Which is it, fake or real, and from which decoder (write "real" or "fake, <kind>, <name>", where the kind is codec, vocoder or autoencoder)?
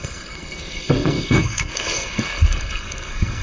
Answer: fake, codec, SNAC